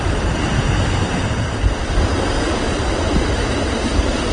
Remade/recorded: remade